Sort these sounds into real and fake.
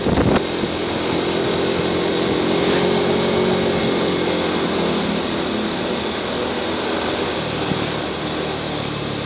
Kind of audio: real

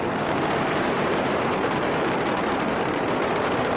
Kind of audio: fake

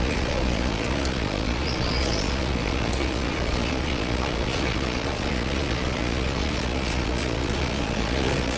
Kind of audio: fake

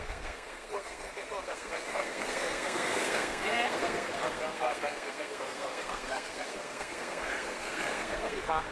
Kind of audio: fake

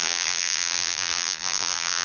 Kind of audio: fake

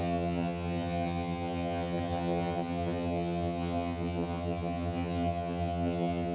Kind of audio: fake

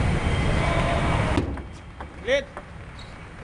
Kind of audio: real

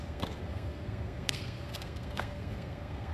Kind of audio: fake